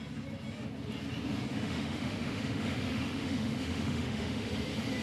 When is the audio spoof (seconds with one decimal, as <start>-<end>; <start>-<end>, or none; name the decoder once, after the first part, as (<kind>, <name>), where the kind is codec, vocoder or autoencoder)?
1.5-4.5 (autoencoder, DAC-VAE)